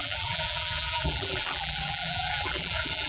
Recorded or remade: remade